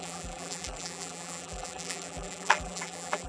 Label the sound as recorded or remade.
remade